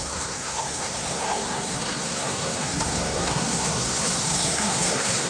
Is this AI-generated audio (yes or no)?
yes